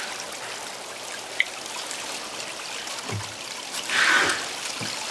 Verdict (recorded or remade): recorded